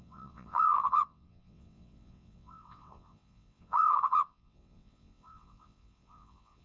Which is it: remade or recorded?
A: remade